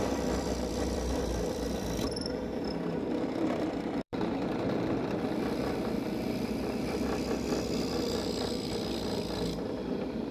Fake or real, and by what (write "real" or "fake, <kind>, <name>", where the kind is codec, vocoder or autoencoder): fake, vocoder, BigVGAN v2